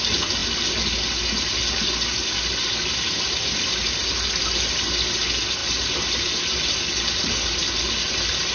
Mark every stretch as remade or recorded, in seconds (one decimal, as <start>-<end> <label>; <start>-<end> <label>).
0.0-5.6 recorded; 5.6-6.8 remade; 6.8-8.5 recorded